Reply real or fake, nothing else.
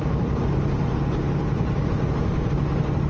real